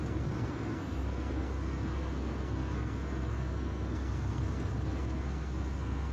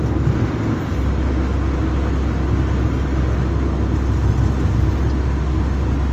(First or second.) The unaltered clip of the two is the second